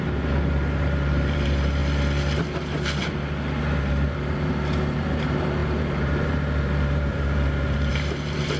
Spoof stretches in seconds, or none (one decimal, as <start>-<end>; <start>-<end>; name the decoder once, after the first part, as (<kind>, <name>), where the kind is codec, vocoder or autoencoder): 0.0-1.8 (vocoder, BigVGAN v2); 3.9-8.6